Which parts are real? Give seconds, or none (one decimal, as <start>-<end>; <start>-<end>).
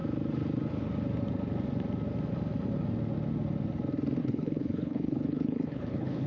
0.0-4.2